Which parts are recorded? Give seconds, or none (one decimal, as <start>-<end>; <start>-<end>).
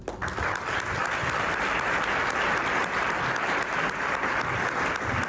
0.0-5.3